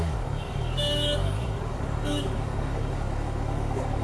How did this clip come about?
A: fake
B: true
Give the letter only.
A